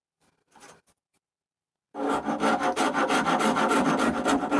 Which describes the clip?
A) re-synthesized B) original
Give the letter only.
B